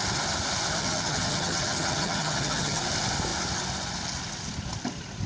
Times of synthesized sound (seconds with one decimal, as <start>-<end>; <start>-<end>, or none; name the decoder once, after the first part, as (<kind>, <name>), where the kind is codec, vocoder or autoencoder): 0.8-2.8 (vocoder, HiFi-GAN)